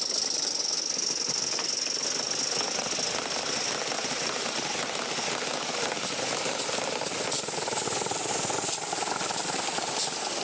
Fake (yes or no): no